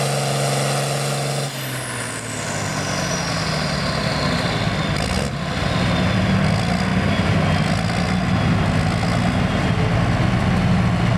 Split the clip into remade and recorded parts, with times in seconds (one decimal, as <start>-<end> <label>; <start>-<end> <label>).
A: 0.0-11.2 recorded